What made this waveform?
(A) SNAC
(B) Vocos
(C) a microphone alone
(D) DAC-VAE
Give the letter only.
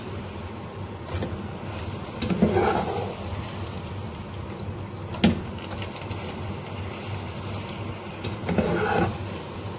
C